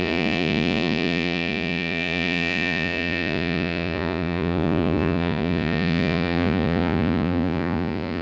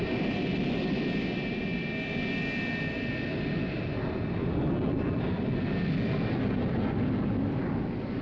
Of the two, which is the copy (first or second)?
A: first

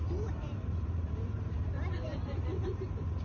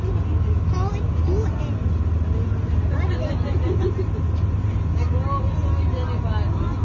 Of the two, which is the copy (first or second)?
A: first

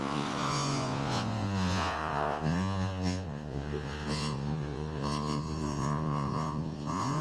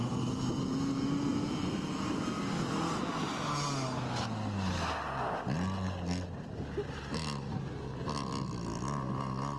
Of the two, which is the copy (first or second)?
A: first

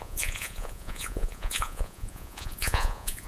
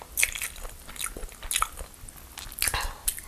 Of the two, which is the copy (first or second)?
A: first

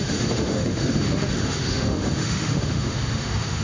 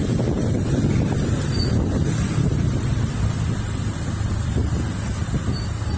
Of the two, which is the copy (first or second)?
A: first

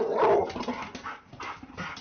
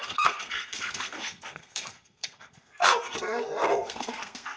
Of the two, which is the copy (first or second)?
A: second